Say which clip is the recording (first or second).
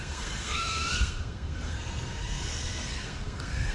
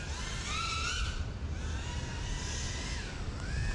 second